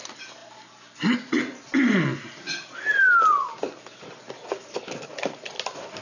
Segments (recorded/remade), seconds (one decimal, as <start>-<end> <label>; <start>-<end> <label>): 0.0-6.0 recorded